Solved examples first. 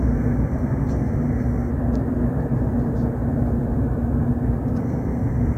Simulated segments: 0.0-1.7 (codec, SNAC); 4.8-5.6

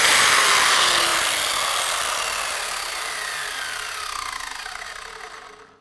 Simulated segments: none

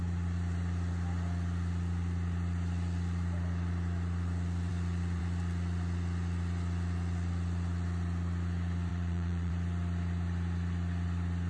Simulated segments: 8.9-9.5 (vocoder, Vocos)

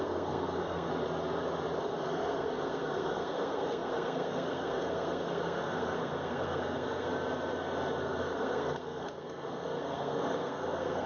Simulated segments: 0.0-0.9 (codec, SNAC); 1.8-7.1; 8.0-11.1